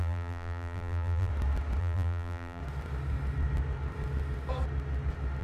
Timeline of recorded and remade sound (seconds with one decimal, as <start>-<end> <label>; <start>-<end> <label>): 0.0-1.3 remade; 1.3-1.8 recorded; 1.8-2.6 remade; 2.6-5.4 recorded